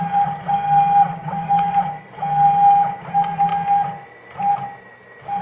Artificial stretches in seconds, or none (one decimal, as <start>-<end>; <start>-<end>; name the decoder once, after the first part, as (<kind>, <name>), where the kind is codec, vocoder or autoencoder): 1.1-1.7 (codec, DAC)